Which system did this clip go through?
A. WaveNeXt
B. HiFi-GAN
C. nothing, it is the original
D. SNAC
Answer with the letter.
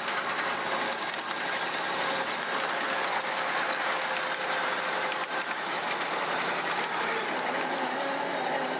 C